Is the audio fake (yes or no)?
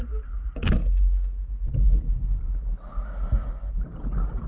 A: no